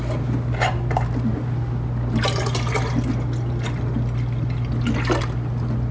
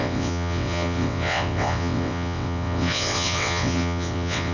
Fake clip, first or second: second